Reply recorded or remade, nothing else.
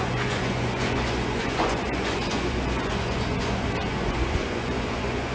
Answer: remade